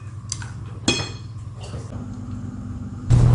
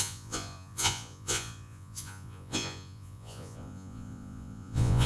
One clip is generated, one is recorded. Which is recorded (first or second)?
first